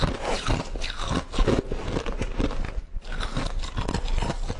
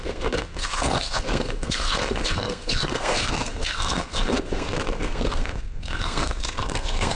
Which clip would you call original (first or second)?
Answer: first